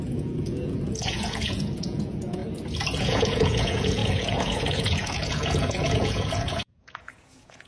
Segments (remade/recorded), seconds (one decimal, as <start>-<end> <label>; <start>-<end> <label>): 0.0-2.4 remade; 2.4-3.0 recorded; 3.0-7.7 remade